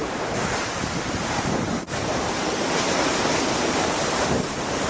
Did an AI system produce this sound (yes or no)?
yes